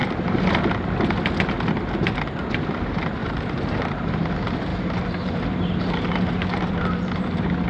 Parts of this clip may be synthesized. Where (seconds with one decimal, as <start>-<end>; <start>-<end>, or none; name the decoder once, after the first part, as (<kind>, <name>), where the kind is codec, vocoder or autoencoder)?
3.2-4.1 (vocoder, BigVGAN v2); 4.7-7.2